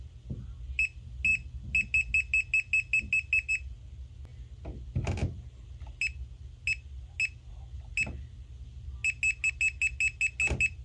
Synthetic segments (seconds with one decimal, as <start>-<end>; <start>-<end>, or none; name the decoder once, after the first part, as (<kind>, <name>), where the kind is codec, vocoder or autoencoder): none